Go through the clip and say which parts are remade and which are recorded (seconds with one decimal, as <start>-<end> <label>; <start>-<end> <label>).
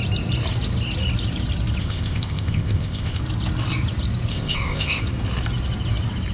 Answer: 0.0-1.8 recorded; 1.8-3.2 remade; 3.2-4.3 recorded; 4.3-5.0 remade; 5.0-6.3 recorded